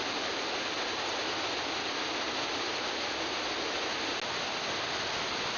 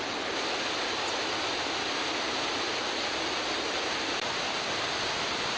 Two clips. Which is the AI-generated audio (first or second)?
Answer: second